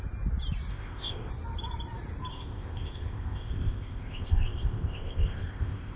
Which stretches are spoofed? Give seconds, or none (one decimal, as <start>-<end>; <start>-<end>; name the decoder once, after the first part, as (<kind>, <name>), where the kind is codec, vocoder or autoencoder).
0.7-1.3 (codec, ZipCodec); 2.3-6.0